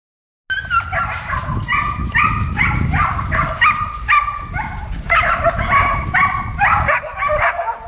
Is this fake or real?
real